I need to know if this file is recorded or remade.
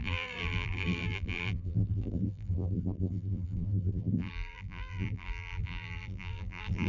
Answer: remade